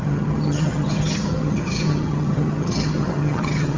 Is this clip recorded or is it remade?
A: remade